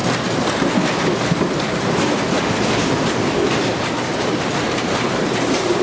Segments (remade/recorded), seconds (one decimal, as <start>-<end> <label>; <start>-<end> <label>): 0.0-3.7 recorded; 3.7-5.8 remade